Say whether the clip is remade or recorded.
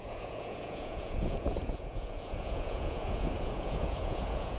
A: remade